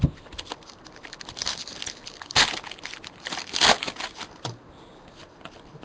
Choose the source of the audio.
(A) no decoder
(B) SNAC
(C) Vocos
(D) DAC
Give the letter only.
A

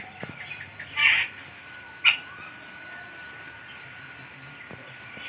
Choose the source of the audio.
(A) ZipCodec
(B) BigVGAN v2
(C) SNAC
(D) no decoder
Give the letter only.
B